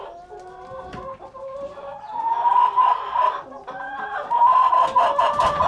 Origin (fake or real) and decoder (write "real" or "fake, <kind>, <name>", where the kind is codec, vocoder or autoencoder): real